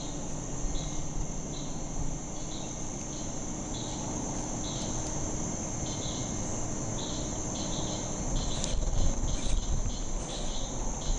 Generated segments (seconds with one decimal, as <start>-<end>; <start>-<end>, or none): none